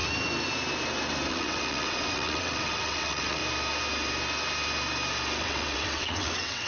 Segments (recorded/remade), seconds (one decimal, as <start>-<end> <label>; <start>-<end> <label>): 0.0-1.3 recorded; 1.3-3.4 remade; 3.4-5.4 recorded; 5.4-6.7 remade